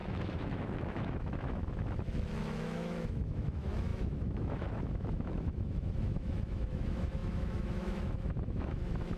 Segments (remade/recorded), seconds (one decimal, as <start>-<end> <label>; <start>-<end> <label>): 0.0-9.2 remade

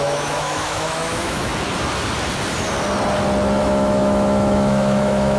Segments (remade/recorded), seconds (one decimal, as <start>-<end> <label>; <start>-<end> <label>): 0.0-1.5 remade; 1.5-3.6 recorded; 3.6-5.4 remade

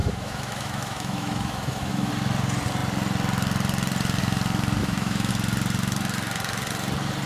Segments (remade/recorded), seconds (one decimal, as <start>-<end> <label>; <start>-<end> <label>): 0.0-2.1 remade; 2.1-4.8 recorded; 4.8-5.3 remade; 5.3-7.3 recorded

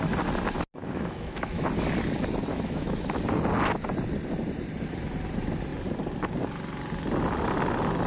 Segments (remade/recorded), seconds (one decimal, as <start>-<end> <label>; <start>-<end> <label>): 0.0-0.8 recorded; 0.8-1.7 remade; 1.7-2.5 recorded; 2.5-3.2 remade; 3.2-8.1 recorded